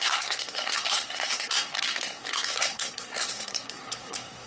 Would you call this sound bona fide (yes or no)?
no